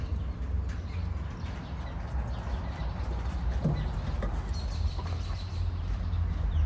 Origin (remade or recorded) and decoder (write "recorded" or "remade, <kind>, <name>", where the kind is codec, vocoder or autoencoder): recorded